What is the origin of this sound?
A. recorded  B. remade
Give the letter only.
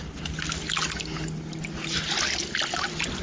A